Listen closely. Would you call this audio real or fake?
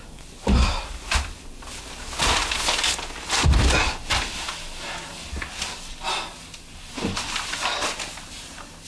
real